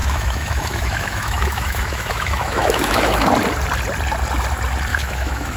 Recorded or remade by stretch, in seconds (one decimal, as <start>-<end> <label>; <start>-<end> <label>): 0.0-3.3 remade; 3.3-4.9 recorded; 4.9-5.6 remade